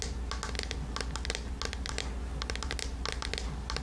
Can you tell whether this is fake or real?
real